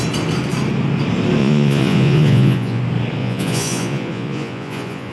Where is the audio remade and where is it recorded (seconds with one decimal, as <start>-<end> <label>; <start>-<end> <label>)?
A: 0.0-1.4 recorded; 1.4-2.8 remade; 2.8-3.2 recorded; 3.2-5.1 remade